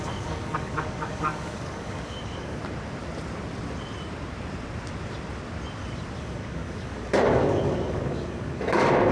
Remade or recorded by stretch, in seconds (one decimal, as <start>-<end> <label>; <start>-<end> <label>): 0.0-2.6 remade; 2.6-6.2 recorded; 6.2-9.1 remade